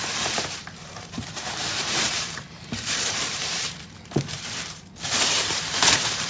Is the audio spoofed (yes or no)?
yes